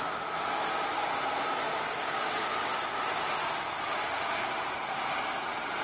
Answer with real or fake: real